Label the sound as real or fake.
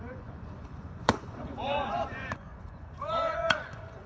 fake